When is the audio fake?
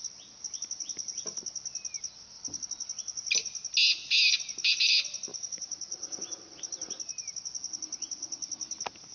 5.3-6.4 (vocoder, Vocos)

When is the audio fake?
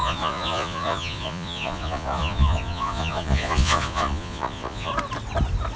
0.0-4.9 (vocoder, Vocos)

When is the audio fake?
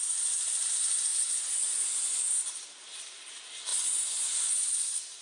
1.1-2.3 (vocoder, Vocos); 3.7-4.7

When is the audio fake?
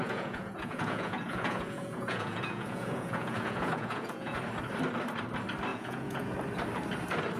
0.0-4.4 (vocoder, Vocos); 5.7-6.3